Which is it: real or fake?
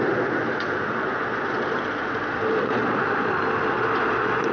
fake